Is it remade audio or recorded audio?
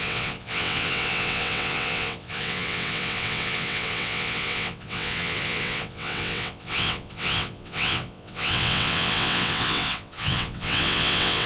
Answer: remade